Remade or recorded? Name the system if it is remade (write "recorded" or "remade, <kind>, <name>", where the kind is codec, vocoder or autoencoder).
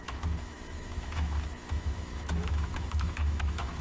remade, autoencoder, DAC-VAE